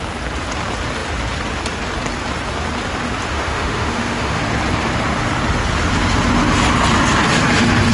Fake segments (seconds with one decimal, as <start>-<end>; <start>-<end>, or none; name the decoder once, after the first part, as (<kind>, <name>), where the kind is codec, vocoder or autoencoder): 3.3-4.4 (autoencoder, DAC-VAE)